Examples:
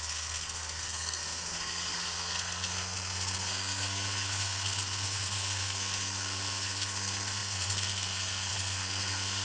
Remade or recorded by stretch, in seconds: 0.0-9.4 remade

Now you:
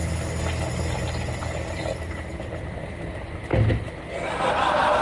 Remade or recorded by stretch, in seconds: 0.0-5.0 recorded

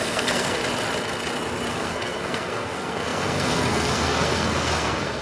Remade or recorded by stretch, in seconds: 0.0-0.6 remade; 0.6-1.7 recorded; 1.7-5.2 remade